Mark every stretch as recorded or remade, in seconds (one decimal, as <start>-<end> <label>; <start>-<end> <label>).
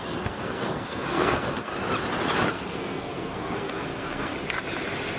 0.0-1.7 remade; 1.7-2.5 recorded; 2.5-4.3 remade; 4.3-5.2 recorded